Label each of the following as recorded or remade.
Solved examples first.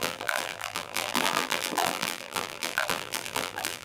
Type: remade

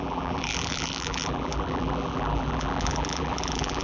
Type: remade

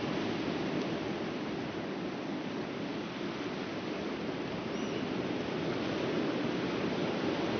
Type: recorded